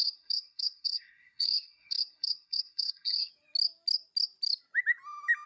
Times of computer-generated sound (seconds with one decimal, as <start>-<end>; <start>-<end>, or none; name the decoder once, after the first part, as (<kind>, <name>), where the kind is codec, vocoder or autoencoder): 0.0-3.3 (codec, SNAC)